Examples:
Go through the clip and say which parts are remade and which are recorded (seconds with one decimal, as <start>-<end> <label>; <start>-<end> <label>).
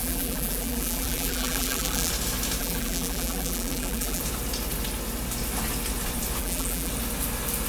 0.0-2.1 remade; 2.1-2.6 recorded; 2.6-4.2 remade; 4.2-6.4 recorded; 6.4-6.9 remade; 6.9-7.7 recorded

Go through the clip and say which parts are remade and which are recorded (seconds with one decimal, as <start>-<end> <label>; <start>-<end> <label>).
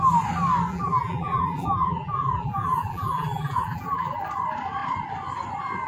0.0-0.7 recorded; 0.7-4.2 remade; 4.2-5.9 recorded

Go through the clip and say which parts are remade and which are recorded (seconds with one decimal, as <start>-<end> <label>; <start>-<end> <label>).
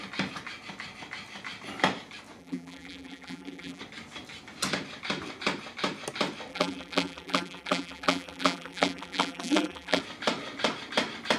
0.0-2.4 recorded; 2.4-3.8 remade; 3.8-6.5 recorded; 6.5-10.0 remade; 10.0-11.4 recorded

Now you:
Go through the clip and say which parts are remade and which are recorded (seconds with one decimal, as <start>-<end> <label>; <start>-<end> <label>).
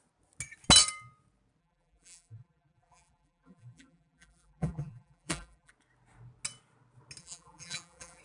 0.0-1.6 recorded; 1.6-5.7 remade; 5.7-7.2 recorded; 7.2-8.2 remade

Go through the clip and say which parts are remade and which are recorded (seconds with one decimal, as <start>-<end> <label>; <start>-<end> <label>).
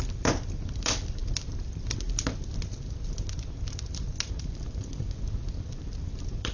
0.0-1.2 remade; 1.2-4.3 recorded; 4.3-6.5 remade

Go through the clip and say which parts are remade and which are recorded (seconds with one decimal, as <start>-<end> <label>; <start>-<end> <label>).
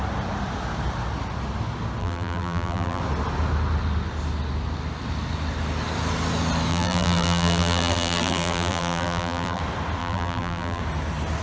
0.0-2.0 recorded; 2.0-3.0 remade; 3.0-6.7 recorded; 6.7-9.6 remade; 9.6-10.0 recorded; 10.0-10.8 remade; 10.8-11.4 recorded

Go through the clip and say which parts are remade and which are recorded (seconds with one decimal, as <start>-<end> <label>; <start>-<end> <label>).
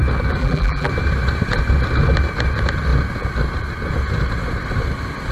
0.0-0.4 recorded; 0.4-0.9 remade; 0.9-5.3 recorded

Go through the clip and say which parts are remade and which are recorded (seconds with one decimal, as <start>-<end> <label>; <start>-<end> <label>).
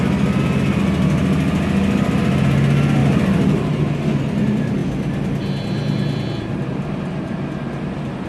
0.0-3.0 recorded; 3.0-3.8 remade; 3.8-8.3 recorded